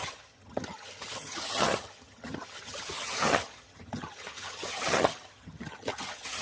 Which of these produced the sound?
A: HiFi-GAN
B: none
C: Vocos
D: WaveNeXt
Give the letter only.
A